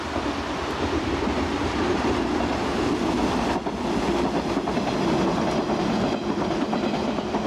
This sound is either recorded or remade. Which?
remade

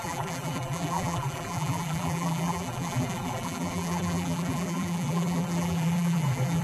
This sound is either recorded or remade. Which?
remade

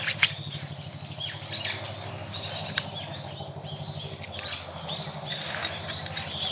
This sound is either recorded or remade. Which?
recorded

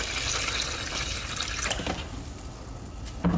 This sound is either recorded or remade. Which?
recorded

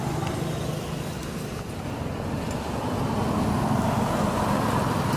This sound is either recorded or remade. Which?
recorded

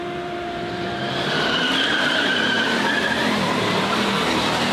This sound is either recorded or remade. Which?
remade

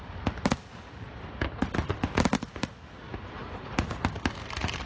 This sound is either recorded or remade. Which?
recorded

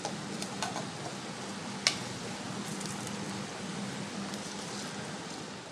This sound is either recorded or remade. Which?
recorded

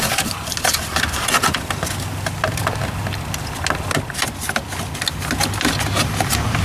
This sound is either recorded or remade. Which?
recorded